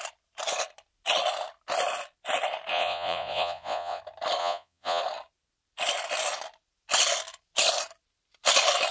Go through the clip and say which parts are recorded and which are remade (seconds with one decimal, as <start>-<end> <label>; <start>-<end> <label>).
0.0-2.7 recorded; 2.7-4.0 remade; 4.0-4.4 recorded; 4.4-5.0 remade; 5.0-8.9 recorded